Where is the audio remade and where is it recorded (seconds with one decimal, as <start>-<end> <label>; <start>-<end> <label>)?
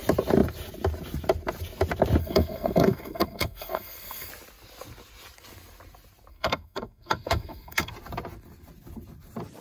0.0-2.2 recorded; 2.2-4.3 remade; 4.3-6.3 recorded; 6.3-7.9 remade; 7.9-9.6 recorded